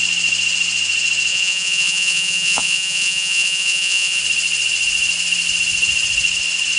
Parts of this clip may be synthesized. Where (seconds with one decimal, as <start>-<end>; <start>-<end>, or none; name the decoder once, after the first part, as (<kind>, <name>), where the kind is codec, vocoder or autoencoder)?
1.3-4.2 (vocoder, Vocos)